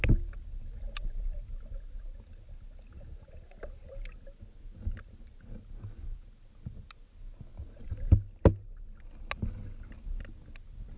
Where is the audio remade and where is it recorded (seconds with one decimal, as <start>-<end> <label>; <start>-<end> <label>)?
0.0-11.0 recorded